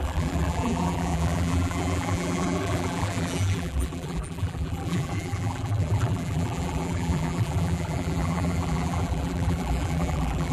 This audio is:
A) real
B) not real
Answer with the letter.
B